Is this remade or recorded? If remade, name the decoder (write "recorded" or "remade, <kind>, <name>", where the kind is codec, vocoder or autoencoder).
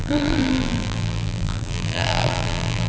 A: remade, vocoder, BigVGAN v2